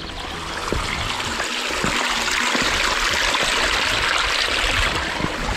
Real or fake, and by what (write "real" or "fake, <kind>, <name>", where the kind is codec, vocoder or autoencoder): real